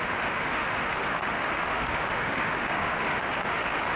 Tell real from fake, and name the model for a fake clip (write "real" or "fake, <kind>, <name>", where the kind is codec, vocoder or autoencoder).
fake, autoencoder, DAC-VAE